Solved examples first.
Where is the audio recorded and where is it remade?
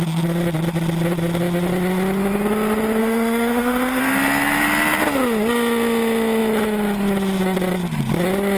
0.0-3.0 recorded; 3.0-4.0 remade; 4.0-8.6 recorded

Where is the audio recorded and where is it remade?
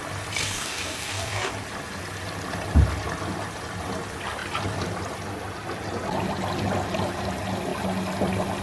0.0-0.4 recorded; 0.4-1.5 remade; 1.5-8.6 recorded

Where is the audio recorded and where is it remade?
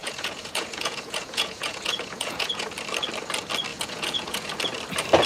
0.0-2.7 remade; 2.7-3.7 recorded; 3.7-4.5 remade; 4.5-5.3 recorded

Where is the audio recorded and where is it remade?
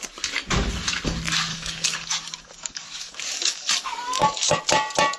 0.0-1.5 recorded; 1.5-4.6 remade; 4.6-5.2 recorded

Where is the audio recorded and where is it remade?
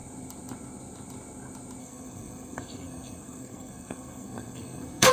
0.0-1.8 recorded; 1.8-5.1 remade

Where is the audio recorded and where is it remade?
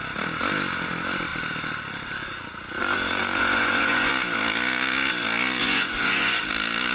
0.0-2.8 recorded; 2.8-4.1 remade; 4.1-5.6 recorded; 5.6-6.4 remade; 6.4-6.9 recorded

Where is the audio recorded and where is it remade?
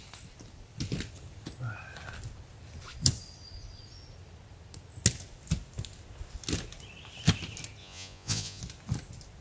0.0-7.8 recorded; 7.8-8.6 remade; 8.6-9.4 recorded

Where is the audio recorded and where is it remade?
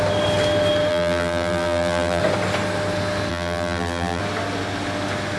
0.0-0.9 recorded; 0.9-2.2 remade; 2.2-3.3 recorded; 3.3-4.2 remade; 4.2-5.4 recorded